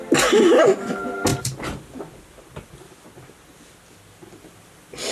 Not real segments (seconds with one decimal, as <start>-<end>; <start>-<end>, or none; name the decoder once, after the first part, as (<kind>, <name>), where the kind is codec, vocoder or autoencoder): none